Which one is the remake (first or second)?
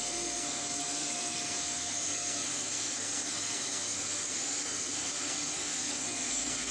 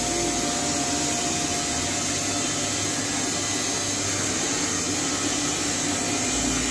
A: first